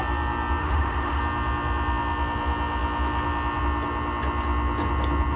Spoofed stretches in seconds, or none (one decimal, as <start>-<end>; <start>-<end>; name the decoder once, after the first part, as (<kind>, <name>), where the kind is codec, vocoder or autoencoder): 0.6-1.2 (autoencoder, DAC-VAE)